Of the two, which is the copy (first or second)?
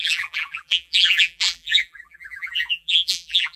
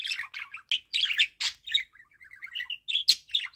first